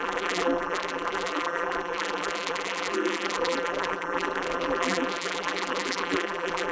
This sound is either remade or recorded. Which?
remade